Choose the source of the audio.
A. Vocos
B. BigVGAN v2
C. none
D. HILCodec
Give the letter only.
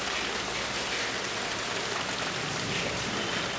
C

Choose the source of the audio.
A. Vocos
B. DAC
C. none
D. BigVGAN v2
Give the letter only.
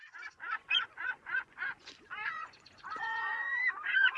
A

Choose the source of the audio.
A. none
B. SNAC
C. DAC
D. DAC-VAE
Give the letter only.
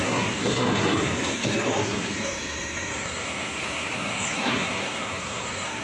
B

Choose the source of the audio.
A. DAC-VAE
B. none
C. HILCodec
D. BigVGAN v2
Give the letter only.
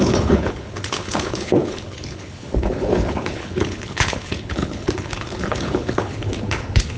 C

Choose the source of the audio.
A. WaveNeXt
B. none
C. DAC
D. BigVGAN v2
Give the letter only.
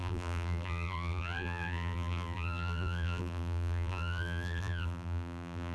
D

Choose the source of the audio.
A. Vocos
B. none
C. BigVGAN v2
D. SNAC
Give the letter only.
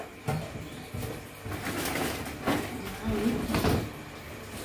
B